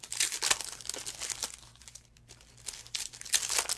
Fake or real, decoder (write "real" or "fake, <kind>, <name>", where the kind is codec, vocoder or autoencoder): real